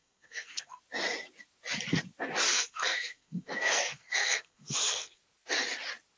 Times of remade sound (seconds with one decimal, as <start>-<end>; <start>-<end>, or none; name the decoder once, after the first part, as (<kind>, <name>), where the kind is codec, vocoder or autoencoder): 0.0-0.8 (codec, SNAC); 2.5-5.2